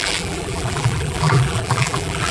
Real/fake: fake